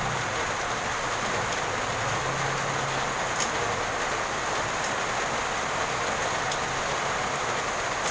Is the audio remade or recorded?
recorded